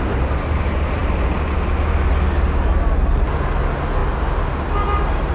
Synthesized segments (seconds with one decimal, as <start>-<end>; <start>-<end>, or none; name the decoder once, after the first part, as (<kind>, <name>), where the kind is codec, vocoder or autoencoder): none